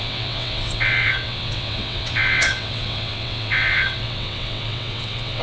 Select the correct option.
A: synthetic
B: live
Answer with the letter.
A